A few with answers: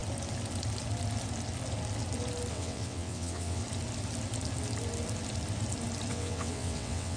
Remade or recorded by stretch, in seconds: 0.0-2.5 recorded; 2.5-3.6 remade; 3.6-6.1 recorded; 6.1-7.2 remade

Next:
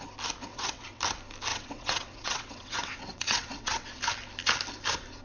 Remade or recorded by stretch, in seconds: 0.0-0.5 recorded; 0.5-1.0 remade; 1.0-1.5 recorded; 1.5-4.0 remade; 4.0-5.2 recorded

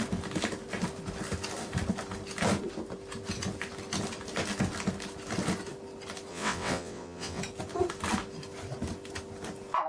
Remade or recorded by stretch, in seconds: 0.0-6.3 recorded; 6.3-7.4 remade; 7.4-9.9 recorded

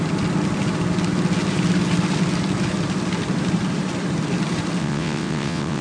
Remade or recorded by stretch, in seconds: 0.0-4.8 recorded; 4.8-5.8 remade

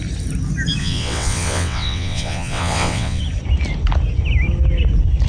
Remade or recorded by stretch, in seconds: 0.0-0.8 recorded; 0.8-3.2 remade; 3.2-5.3 recorded